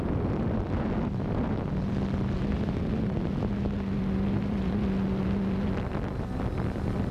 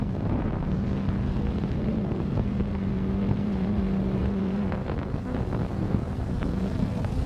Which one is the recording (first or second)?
first